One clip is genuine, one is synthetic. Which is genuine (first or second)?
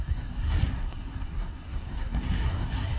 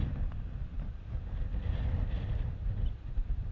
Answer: second